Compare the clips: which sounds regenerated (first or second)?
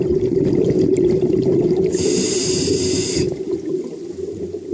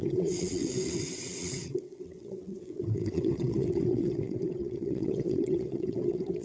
second